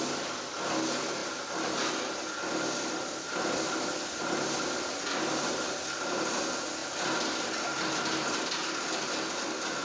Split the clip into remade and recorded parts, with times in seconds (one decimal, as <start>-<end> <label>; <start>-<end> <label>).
0.0-1.2 recorded; 1.2-1.9 remade; 1.9-9.8 recorded